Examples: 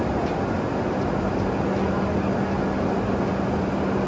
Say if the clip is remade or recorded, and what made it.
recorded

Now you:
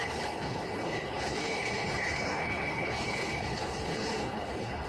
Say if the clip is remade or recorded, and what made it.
remade, codec, HILCodec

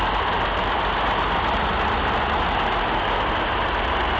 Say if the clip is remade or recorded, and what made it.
recorded